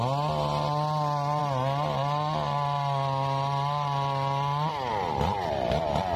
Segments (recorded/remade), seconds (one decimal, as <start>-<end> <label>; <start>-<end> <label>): 0.0-6.2 recorded